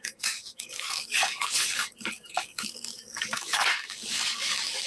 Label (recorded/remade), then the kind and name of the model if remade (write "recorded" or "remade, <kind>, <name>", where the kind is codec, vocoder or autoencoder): remade, codec, DAC